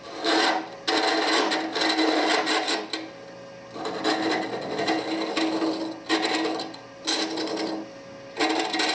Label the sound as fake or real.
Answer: real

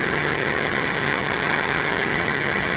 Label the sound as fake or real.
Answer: fake